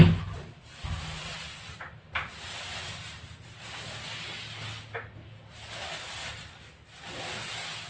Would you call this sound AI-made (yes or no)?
no